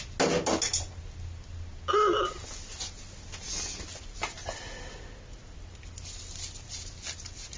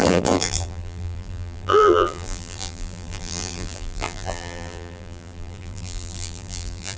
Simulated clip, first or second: second